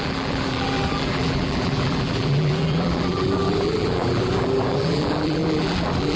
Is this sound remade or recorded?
remade